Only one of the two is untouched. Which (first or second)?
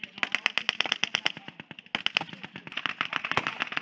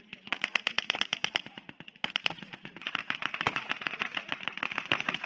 first